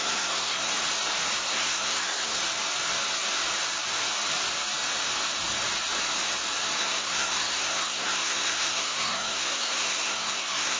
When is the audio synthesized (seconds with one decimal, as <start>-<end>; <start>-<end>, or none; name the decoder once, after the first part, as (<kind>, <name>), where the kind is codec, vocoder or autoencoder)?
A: 0.0-0.7 (codec, SNAC); 1.5-2.4; 6.8-10.8